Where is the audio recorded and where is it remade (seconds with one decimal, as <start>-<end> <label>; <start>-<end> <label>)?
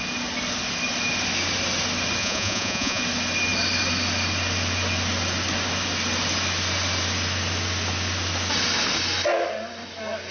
0.0-2.2 recorded; 2.2-3.0 remade; 3.0-10.3 recorded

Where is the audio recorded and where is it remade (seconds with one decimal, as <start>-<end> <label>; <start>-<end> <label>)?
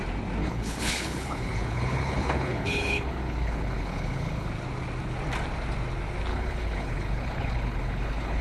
0.0-0.4 recorded; 0.4-4.5 remade; 4.5-6.3 recorded; 6.3-8.4 remade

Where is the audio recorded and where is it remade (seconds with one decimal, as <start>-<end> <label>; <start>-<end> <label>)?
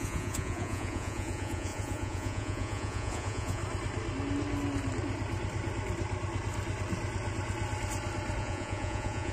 0.0-3.6 remade; 3.6-8.4 recorded; 8.4-9.3 remade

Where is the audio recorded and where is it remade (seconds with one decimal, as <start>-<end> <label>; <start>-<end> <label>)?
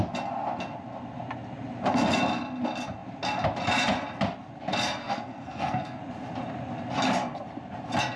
0.0-5.0 recorded; 5.0-6.0 remade; 6.0-8.2 recorded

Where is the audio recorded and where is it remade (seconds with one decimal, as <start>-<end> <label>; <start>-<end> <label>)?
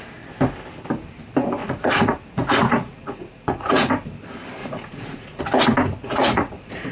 0.0-1.6 recorded; 1.6-3.9 remade; 3.9-4.6 recorded; 4.6-5.4 remade; 5.4-6.0 recorded; 6.0-6.9 remade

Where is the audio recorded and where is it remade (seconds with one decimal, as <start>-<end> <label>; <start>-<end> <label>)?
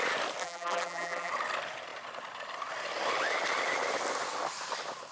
0.0-0.4 recorded; 0.4-1.3 remade; 1.3-5.1 recorded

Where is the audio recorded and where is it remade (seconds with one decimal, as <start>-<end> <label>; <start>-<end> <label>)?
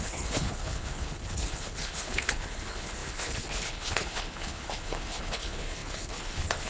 0.0-6.7 remade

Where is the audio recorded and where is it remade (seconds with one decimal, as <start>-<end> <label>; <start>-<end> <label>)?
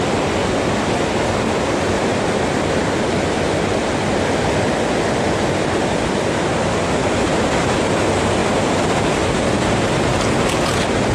0.0-0.4 recorded; 0.4-1.1 remade; 1.1-7.3 recorded; 7.3-7.9 remade; 7.9-11.1 recorded